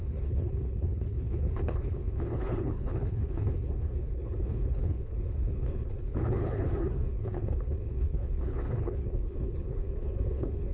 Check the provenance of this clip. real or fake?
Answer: fake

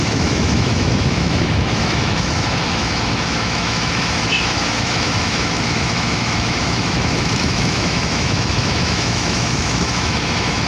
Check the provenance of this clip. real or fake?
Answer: fake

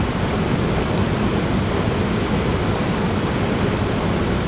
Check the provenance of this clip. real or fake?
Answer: real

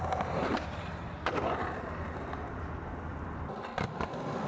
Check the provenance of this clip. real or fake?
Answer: real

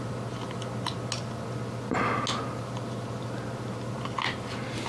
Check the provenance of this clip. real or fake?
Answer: real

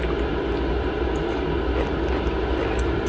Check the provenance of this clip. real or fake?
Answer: real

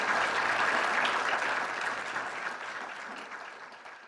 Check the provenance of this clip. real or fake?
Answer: real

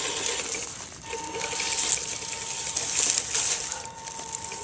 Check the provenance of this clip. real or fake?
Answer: real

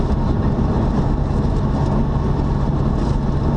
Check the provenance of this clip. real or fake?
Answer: real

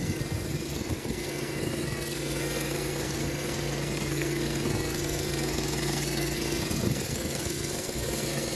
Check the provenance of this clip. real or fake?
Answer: fake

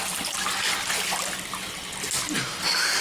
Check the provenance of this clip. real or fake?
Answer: real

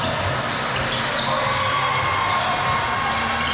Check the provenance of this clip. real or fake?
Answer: real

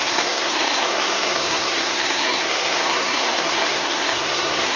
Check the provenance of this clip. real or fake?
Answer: fake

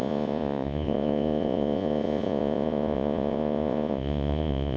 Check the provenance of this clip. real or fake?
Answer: fake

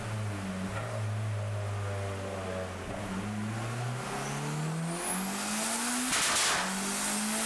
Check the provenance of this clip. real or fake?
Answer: real